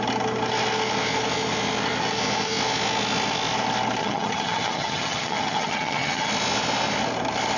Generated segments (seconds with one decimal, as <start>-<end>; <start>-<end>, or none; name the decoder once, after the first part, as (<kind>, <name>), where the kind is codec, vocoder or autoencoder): 4.0-6.3 (vocoder, HiFi-GAN)